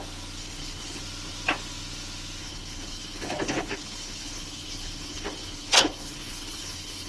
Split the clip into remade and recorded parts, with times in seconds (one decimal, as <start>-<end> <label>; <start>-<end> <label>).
0.0-0.4 recorded; 0.4-1.0 remade; 1.0-2.4 recorded; 2.4-7.1 remade